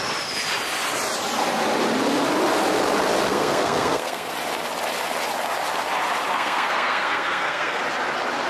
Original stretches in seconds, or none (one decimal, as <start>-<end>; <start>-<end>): 0.0-3.3; 4.3-6.3; 7.8-8.5